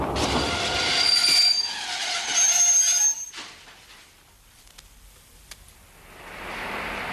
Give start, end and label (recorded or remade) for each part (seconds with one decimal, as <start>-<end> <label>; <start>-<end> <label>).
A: 0.0-7.1 recorded